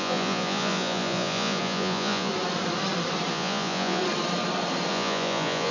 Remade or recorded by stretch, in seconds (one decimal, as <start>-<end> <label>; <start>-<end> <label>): 0.0-2.3 remade; 2.3-3.3 recorded; 3.3-4.0 remade; 4.0-4.9 recorded; 4.9-5.7 remade